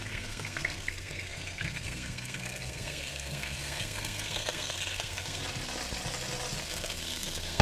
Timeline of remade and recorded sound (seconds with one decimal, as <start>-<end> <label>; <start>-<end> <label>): 0.0-5.4 remade; 5.4-6.6 recorded; 6.6-7.6 remade